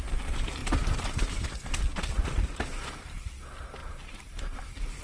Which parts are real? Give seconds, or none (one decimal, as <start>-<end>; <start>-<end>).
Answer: 0.0-0.6; 1.5-1.9; 2.8-3.8; 4.3-5.0